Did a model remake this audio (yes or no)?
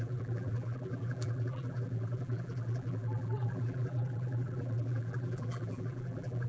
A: yes